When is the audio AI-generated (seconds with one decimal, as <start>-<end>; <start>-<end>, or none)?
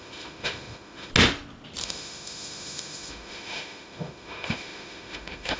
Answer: 0.0-1.1; 1.8-5.6